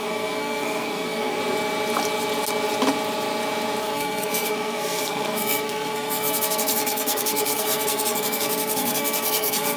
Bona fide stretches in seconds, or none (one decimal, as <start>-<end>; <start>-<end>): 1.4-3.8